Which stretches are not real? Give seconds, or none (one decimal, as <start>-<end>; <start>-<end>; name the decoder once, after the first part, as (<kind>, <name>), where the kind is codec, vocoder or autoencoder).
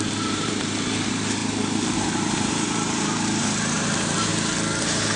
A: 0.0-4.3 (vocoder, BigVGAN v2); 4.8-5.2